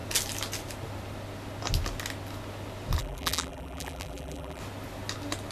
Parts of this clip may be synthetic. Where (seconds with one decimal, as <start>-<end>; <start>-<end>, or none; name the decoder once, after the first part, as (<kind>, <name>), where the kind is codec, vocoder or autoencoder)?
3.0-4.6 (vocoder, BigVGAN v2)